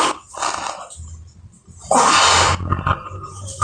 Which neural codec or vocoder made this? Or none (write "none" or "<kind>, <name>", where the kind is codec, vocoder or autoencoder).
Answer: none